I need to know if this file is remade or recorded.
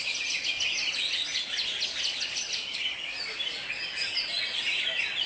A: recorded